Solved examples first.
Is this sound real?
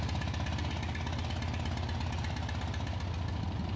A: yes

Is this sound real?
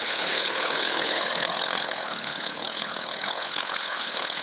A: no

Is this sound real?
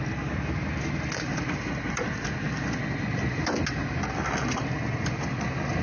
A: yes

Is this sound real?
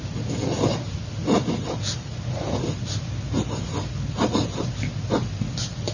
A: yes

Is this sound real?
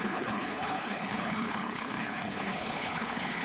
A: no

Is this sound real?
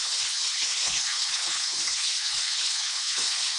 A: no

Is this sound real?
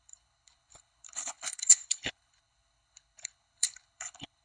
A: no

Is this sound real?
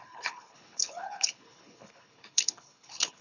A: no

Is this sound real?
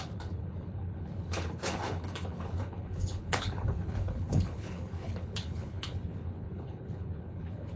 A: no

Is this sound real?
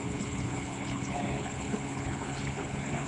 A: no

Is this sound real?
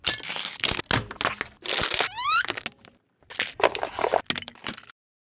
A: yes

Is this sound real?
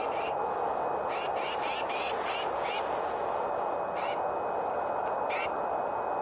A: yes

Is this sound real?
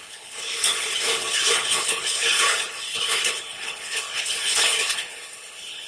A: no